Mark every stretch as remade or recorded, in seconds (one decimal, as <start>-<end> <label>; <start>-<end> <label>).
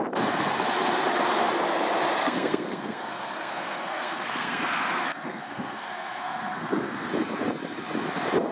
0.0-2.2 recorded; 2.2-7.1 remade; 7.1-8.5 recorded